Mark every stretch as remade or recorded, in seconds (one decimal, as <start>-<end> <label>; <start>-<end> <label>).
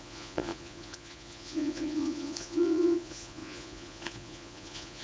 0.0-5.0 remade